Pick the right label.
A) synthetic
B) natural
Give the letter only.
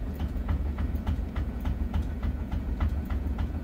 A